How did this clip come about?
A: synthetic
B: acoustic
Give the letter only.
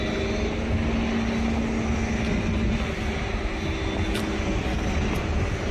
B